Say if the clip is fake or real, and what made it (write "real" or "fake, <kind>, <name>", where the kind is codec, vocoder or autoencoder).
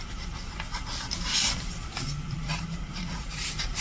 fake, vocoder, BigVGAN v2